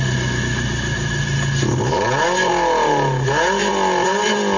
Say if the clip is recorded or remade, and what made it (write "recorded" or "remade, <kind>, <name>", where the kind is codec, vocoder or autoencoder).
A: recorded